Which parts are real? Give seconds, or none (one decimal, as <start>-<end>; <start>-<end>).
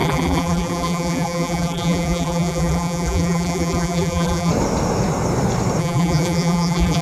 4.5-5.8